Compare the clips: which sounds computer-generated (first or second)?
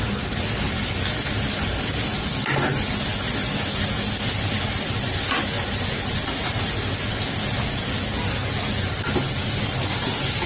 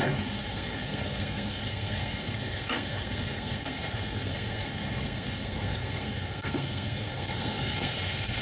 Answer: second